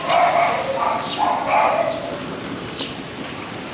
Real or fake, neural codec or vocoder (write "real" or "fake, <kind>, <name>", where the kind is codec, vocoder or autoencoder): real